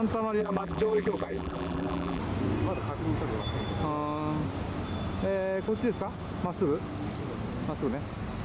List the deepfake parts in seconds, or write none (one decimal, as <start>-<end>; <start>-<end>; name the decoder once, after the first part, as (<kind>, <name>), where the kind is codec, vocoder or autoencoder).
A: 0.4-2.2 (vocoder, BigVGAN v2)